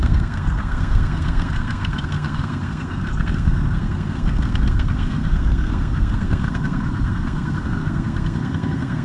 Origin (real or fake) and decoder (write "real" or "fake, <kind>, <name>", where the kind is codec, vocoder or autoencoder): fake, codec, SNAC